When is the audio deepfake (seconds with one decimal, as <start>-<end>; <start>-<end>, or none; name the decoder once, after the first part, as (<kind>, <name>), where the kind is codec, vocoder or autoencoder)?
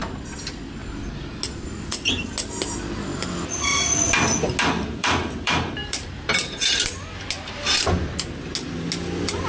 5.0-7.3 (vocoder, BigVGAN v2)